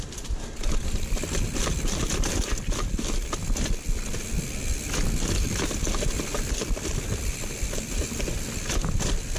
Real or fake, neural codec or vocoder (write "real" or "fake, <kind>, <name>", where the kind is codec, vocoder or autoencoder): real